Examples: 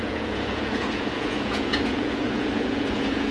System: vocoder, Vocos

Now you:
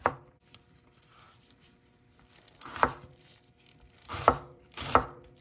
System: vocoder, BigVGAN v2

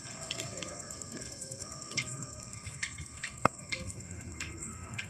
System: codec, SNAC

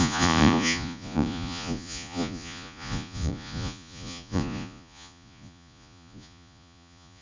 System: vocoder, Vocos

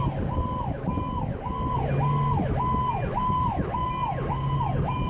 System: none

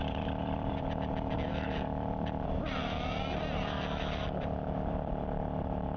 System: vocoder, BigVGAN v2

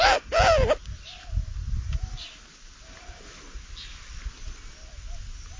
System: none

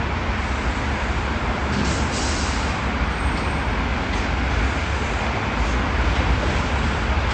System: none